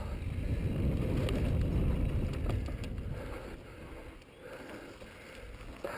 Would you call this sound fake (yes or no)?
no